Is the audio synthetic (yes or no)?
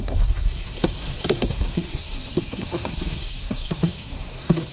yes